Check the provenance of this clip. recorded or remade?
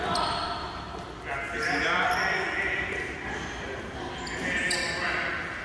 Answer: recorded